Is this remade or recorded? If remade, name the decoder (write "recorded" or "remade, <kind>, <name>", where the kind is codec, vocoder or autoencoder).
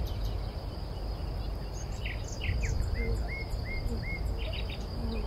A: recorded